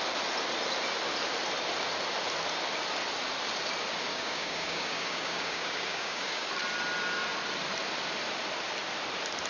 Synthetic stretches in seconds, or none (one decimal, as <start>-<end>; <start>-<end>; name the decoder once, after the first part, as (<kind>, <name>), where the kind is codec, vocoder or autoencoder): 4.1-6.5 (codec, DAC)